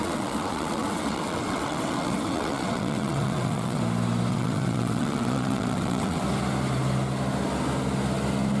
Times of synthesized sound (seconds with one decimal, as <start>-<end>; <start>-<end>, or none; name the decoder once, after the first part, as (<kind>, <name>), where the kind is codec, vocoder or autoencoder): 0.0-3.8 (vocoder, WaveNeXt); 4.3-6.2